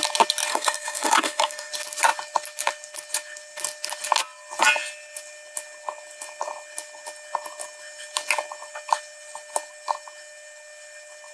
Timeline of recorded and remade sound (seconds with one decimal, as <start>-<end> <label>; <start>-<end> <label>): 0.0-0.5 recorded; 0.5-1.7 remade; 1.7-11.3 recorded